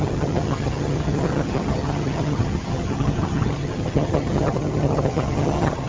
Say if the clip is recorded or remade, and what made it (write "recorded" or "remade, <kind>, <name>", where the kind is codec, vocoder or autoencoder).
remade, vocoder, HiFi-GAN